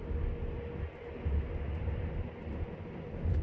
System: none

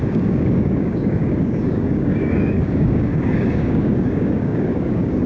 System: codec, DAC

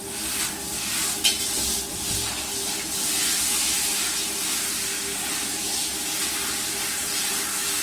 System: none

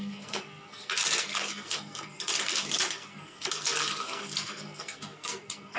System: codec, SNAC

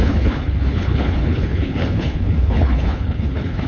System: codec, HILCodec